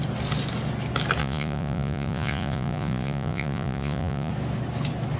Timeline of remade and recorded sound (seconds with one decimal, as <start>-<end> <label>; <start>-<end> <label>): 0.0-1.2 recorded; 1.2-4.3 remade; 4.3-5.2 recorded